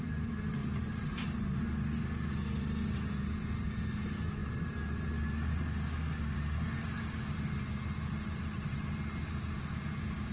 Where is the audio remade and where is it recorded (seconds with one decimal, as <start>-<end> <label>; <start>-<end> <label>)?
0.0-10.3 recorded